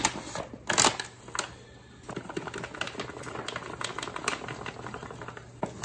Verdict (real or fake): real